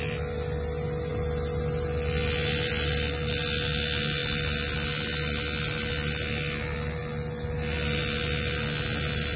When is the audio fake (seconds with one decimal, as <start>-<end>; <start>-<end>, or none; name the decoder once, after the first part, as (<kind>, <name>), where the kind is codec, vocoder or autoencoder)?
none